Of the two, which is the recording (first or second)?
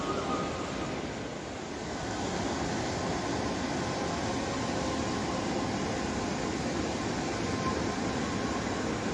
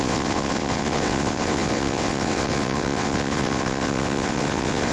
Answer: first